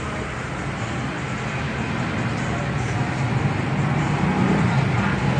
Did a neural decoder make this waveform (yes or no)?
no